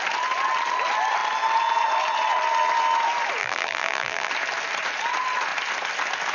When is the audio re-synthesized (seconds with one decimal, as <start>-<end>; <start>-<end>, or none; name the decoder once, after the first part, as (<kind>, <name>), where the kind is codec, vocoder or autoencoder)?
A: 3.4-4.3 (vocoder, BigVGAN v2)

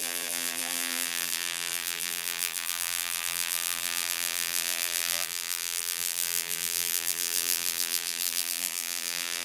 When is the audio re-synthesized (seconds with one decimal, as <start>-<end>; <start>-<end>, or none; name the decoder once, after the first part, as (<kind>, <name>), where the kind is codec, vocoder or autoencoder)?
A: 0.0-9.4 (vocoder, BigVGAN v2)

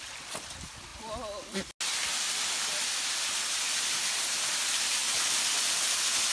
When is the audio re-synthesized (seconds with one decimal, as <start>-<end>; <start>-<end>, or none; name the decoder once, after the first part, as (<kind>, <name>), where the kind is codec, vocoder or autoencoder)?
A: 5.0-5.6 (vocoder, BigVGAN v2)

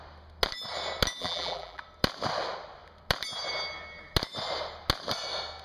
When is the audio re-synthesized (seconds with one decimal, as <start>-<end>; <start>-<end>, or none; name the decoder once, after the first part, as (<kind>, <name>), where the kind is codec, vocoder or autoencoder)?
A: 1.2-1.8 (vocoder, BigVGAN v2)

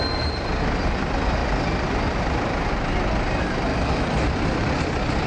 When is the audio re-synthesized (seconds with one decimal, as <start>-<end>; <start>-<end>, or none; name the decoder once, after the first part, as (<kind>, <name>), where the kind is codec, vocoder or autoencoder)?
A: 1.4-2.0 (vocoder, BigVGAN v2); 3.7-4.8

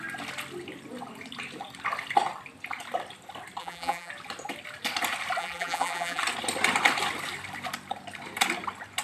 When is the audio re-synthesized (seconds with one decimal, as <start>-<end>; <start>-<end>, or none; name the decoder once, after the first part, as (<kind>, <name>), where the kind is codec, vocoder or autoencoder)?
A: 3.6-4.1 (vocoder, BigVGAN v2); 5.4-6.2